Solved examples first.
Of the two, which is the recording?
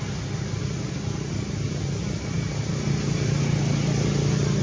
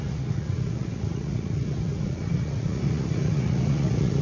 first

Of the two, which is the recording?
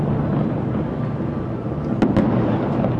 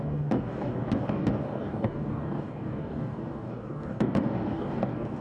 first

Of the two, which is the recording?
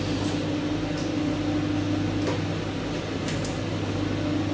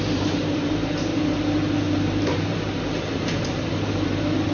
first